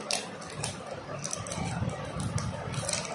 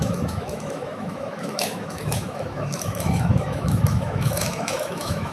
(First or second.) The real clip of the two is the first